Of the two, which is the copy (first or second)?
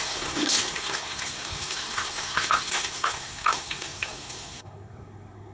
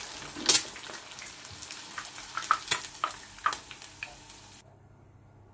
first